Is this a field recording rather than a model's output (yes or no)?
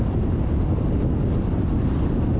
yes